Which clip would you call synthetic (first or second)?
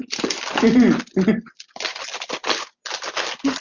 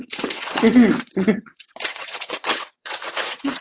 second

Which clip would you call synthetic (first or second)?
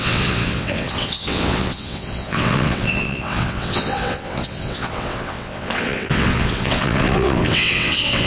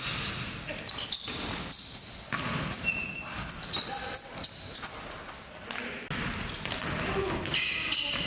first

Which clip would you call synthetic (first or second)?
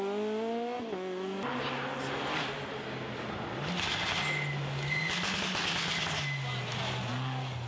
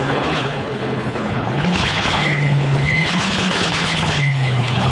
second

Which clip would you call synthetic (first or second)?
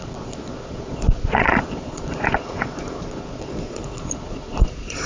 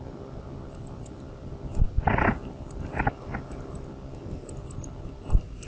first